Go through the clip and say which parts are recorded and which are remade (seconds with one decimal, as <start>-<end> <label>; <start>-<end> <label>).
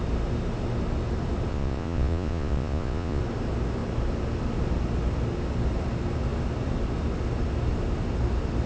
0.0-1.5 recorded; 1.5-3.2 remade; 3.2-8.7 recorded